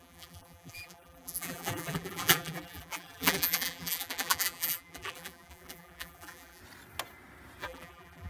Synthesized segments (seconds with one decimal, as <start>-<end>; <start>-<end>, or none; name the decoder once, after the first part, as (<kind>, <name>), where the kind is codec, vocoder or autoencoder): 0.0-6.6 (vocoder, BigVGAN v2); 7.6-8.3